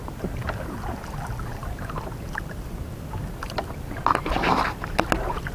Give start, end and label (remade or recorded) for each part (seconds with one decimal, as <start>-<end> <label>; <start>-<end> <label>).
0.0-5.5 recorded